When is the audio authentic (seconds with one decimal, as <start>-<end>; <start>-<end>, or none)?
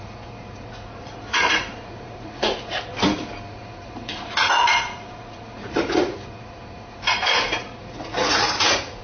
2.9-3.5